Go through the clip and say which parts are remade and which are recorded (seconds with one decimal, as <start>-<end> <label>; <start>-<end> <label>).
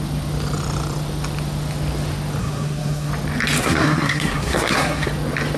0.0-2.4 recorded; 2.4-3.1 remade; 3.1-3.6 recorded; 3.6-5.1 remade; 5.1-5.6 recorded